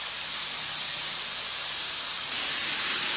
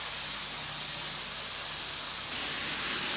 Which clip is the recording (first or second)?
second